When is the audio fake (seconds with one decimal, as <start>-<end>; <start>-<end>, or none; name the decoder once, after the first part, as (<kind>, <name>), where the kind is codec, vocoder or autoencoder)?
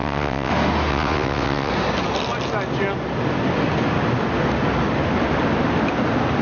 0.0-0.5 (vocoder, WaveNeXt); 0.9-1.7